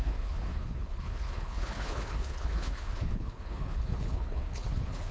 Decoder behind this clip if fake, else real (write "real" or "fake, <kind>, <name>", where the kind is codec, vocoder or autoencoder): fake, codec, HILCodec